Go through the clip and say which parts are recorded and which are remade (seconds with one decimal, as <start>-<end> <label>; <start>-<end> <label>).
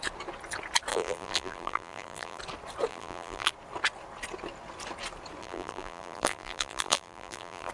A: 0.0-0.9 recorded; 0.9-2.4 remade; 2.4-2.9 recorded; 2.9-3.5 remade; 3.5-5.4 recorded; 5.4-7.7 remade